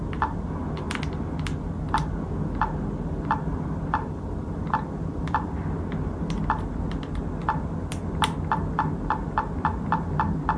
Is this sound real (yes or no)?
yes